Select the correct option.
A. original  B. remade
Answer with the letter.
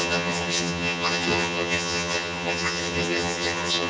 B